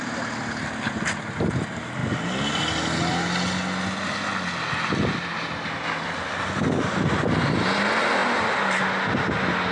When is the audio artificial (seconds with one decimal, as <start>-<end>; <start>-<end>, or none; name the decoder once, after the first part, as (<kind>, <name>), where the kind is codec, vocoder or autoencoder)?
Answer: 8.2-8.8 (vocoder, BigVGAN v2)